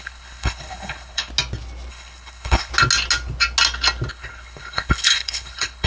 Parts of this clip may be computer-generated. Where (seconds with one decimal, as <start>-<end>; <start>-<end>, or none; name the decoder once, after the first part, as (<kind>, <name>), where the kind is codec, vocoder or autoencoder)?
0.0-1.3 (codec, HILCodec); 1.9-2.7; 4.1-5.9